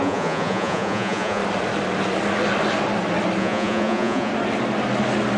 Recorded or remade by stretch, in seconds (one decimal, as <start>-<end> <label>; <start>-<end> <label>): 0.0-1.4 remade; 1.4-3.4 recorded; 3.4-4.3 remade; 4.3-5.4 recorded